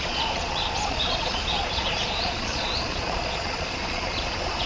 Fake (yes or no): yes